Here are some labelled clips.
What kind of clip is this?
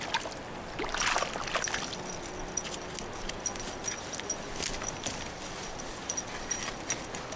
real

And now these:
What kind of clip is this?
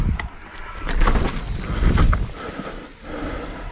real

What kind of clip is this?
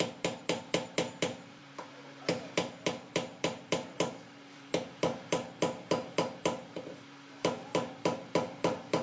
fake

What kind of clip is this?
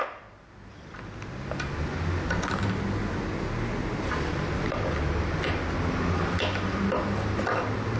real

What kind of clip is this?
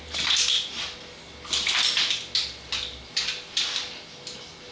real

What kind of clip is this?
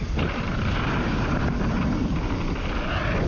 real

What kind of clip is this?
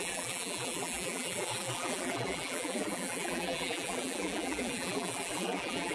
fake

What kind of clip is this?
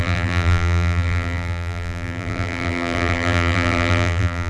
fake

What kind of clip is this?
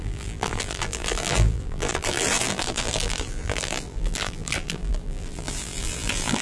fake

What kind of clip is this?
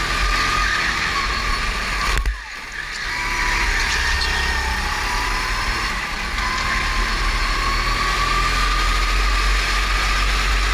real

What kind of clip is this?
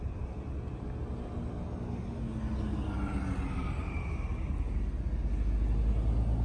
real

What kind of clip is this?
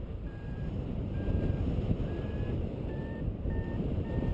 fake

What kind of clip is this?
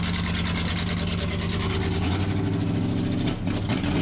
real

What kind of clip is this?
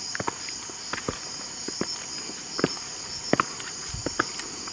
real